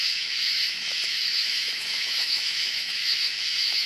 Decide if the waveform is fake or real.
fake